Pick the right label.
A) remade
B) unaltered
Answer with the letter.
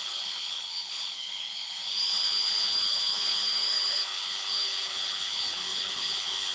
A